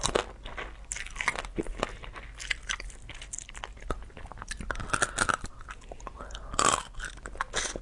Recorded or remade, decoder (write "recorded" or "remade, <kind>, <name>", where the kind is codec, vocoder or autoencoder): recorded